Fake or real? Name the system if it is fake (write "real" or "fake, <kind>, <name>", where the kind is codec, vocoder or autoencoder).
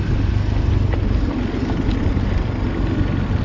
real